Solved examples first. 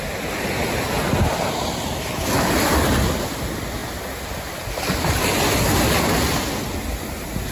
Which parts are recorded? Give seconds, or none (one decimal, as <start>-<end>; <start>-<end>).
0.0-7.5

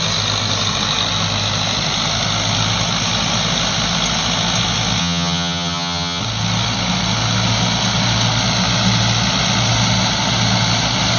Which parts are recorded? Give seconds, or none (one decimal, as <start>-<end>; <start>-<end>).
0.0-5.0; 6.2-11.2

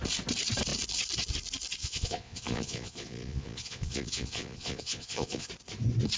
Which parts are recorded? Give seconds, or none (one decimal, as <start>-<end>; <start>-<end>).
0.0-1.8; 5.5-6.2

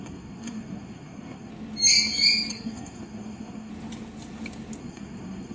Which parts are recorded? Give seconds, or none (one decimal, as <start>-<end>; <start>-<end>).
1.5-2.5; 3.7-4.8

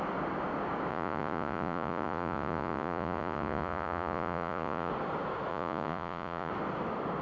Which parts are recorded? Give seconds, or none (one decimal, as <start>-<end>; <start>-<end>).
0.0-0.9; 4.9-5.5; 6.5-7.2